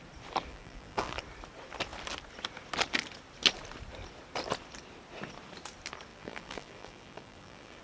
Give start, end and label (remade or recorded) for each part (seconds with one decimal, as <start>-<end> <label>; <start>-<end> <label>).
0.0-0.5 recorded; 0.5-1.2 remade; 1.2-6.1 recorded; 6.1-7.8 remade